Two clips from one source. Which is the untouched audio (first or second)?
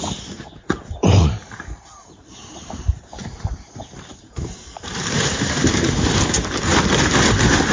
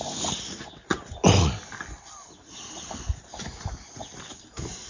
second